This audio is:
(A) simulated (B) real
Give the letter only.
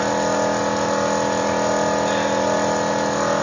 B